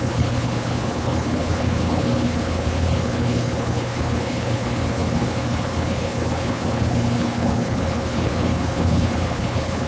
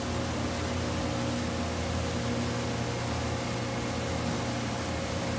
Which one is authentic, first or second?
second